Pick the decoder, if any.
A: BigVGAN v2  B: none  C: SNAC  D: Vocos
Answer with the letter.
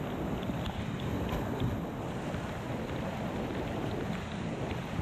B